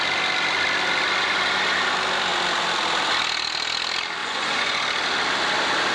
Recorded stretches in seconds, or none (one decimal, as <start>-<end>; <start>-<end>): 0.0-4.2; 4.8-5.9